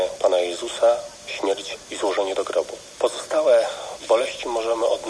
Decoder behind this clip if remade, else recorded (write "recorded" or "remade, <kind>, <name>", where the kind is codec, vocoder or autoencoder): recorded